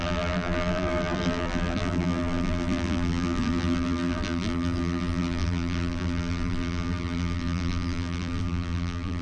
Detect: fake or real fake